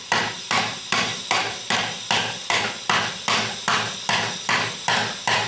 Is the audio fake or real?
real